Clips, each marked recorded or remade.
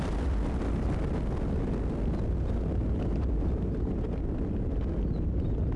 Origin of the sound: recorded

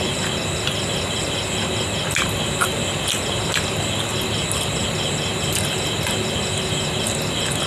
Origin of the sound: recorded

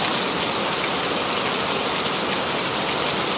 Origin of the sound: recorded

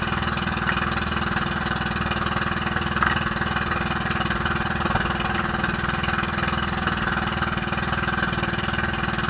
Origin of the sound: recorded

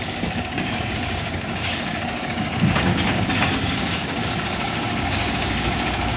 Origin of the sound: remade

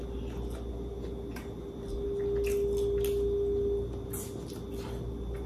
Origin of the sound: recorded